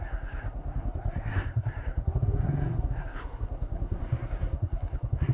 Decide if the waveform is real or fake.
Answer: fake